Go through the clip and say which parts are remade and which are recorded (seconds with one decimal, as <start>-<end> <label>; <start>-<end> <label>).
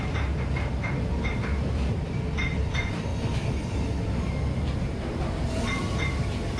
0.0-3.1 remade; 3.1-4.6 recorded; 4.6-6.6 remade